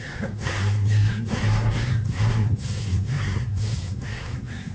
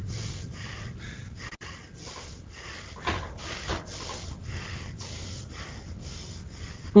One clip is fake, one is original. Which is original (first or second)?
second